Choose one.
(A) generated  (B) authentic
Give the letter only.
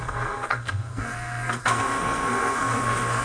A